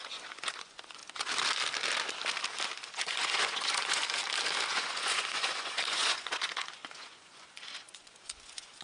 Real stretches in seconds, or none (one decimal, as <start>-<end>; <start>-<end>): 1.0-2.8; 4.0-4.7